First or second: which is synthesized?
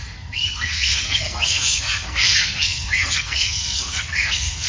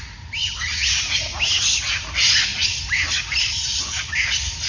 first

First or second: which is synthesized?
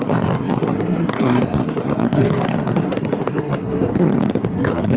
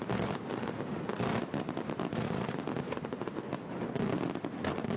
first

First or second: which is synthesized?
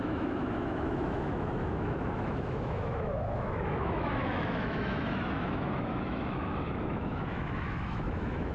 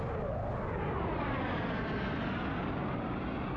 first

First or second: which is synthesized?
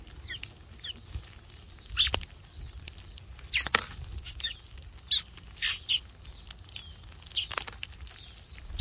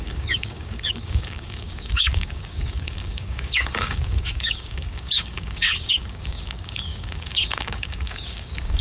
second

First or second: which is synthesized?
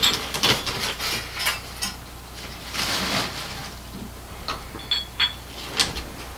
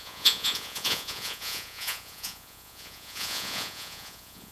second